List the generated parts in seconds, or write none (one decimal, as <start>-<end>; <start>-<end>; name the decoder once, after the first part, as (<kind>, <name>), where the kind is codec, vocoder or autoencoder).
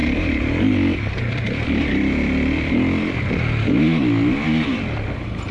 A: 0.0-3.3 (vocoder, BigVGAN v2)